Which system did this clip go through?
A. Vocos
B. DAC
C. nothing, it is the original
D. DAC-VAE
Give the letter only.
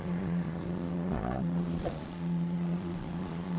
A